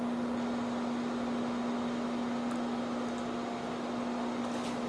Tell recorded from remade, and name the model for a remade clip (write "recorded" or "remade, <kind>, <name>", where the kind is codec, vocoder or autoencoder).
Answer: recorded